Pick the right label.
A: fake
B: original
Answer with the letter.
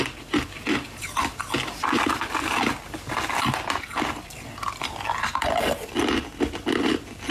B